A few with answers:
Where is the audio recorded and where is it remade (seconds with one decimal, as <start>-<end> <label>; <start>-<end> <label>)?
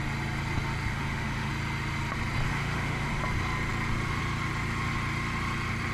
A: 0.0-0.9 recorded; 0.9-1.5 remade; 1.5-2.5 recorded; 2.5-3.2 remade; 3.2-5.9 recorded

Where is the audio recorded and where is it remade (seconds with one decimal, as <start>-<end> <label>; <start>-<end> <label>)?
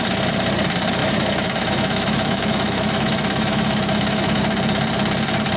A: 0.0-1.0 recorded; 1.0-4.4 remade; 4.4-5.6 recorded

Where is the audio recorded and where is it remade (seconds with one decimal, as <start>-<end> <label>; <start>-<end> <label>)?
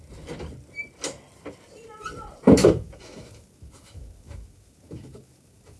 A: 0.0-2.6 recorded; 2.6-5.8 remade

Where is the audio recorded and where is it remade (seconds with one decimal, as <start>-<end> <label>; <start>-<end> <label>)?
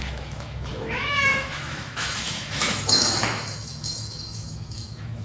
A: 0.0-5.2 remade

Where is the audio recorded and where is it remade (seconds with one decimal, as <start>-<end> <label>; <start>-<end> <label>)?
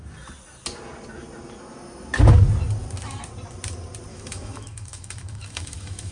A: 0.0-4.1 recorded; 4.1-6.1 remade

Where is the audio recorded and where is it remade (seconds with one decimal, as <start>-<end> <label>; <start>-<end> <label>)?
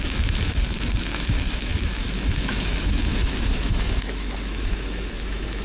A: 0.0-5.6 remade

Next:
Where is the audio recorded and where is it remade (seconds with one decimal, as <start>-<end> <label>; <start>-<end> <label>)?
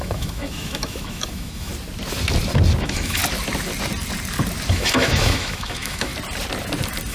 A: 0.0-1.7 remade; 1.7-2.8 recorded; 2.8-3.2 remade; 3.2-4.7 recorded; 4.7-6.1 remade; 6.1-7.1 recorded